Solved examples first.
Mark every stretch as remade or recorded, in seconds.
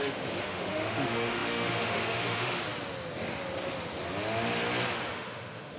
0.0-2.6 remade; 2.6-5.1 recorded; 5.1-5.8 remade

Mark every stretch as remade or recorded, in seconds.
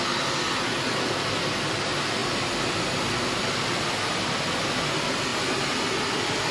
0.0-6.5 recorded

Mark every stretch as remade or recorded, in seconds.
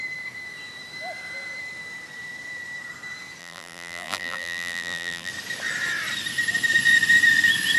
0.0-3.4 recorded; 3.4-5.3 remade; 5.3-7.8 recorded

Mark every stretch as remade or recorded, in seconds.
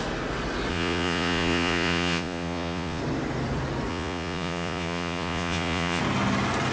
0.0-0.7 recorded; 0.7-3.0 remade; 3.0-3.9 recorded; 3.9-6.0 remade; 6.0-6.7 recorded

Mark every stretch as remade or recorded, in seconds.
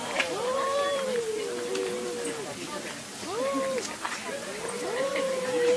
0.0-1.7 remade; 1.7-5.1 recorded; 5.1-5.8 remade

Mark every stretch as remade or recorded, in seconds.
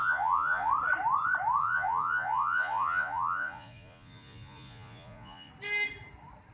0.0-0.7 remade; 0.7-1.6 recorded; 1.6-5.5 remade; 5.5-6.5 recorded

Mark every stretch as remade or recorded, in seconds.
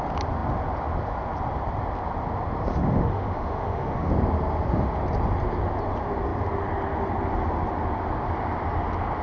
0.0-2.7 recorded; 2.7-4.1 remade; 4.1-9.2 recorded